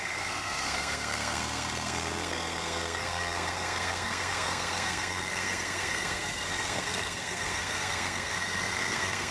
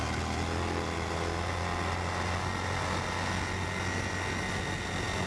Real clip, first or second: second